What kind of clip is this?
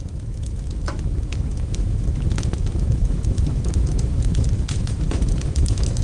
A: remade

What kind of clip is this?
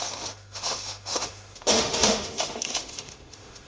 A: remade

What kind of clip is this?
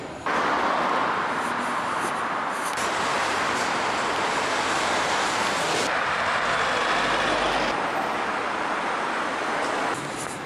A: recorded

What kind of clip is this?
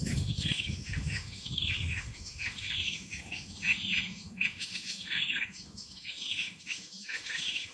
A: remade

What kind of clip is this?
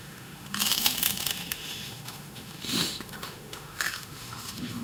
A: remade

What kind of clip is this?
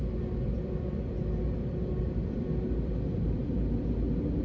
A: recorded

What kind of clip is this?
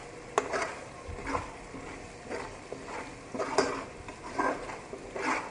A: recorded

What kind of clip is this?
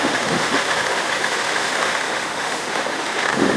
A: remade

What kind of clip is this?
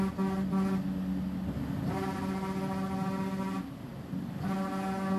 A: recorded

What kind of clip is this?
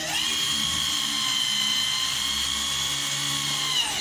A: recorded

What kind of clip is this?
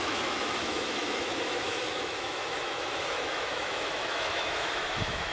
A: remade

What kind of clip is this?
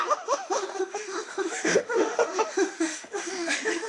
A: remade